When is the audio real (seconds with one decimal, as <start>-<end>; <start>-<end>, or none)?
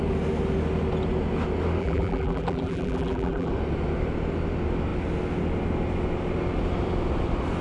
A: 0.0-1.8; 3.5-7.6